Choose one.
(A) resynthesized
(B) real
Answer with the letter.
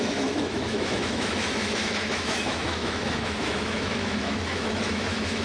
A